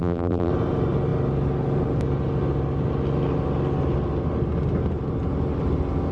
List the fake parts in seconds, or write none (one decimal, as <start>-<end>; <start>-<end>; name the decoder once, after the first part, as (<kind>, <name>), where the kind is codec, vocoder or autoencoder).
0.0-0.5 (vocoder, BigVGAN v2)